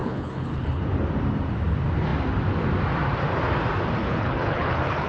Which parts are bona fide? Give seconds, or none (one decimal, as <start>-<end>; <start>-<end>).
0.8-4.0